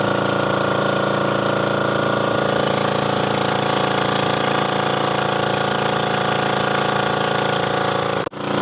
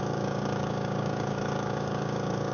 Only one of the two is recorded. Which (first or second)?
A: first